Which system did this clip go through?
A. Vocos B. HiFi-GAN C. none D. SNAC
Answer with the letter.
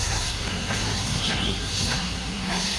D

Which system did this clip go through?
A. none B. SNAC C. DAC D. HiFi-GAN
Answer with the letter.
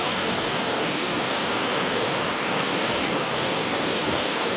C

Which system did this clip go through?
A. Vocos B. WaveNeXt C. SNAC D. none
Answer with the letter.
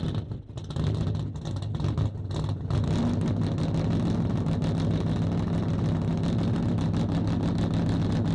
D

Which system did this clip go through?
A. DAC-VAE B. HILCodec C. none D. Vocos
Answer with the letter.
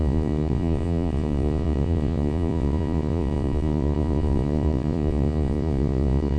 D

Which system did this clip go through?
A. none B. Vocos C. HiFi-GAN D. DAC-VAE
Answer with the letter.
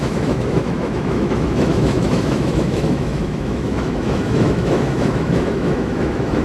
D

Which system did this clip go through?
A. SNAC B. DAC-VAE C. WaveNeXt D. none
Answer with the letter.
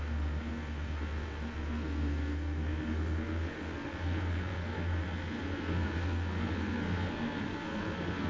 A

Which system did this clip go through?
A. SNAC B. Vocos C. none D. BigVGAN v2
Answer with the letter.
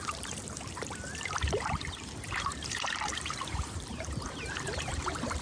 D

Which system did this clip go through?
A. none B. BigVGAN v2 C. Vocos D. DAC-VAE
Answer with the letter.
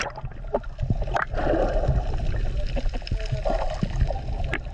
A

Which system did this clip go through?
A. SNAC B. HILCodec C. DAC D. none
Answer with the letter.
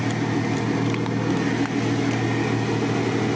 D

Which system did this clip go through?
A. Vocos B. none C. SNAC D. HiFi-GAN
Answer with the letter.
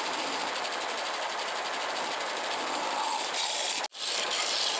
B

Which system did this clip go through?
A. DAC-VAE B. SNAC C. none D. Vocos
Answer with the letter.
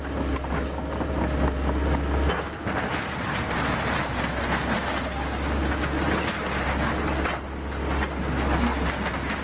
C